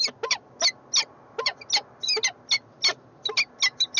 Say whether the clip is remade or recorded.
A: recorded